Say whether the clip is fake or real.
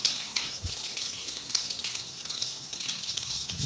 fake